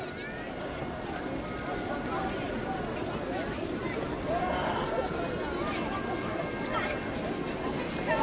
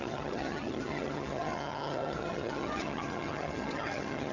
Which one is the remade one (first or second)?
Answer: second